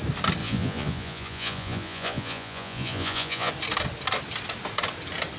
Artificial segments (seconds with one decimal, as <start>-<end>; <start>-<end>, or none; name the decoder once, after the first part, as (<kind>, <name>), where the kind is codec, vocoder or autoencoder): 0.4-3.5 (vocoder, Vocos)